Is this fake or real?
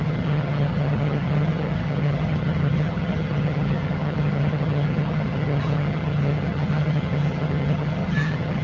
fake